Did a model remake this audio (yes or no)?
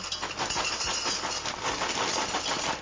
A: no